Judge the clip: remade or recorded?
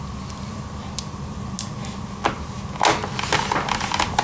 recorded